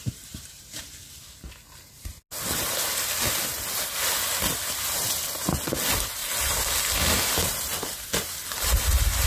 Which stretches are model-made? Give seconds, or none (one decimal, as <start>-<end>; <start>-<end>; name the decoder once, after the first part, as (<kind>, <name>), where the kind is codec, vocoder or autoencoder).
0.0-0.8 (vocoder, BigVGAN v2)